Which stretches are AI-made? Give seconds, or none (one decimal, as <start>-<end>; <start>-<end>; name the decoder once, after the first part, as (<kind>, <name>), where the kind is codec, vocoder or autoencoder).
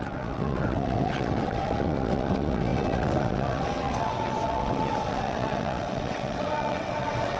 0.0-7.4 (vocoder, WaveNeXt)